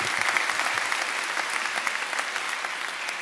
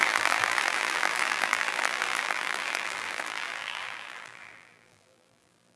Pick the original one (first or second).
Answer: first